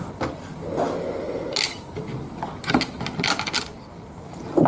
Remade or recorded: recorded